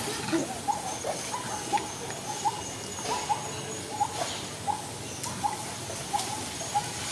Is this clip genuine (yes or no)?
yes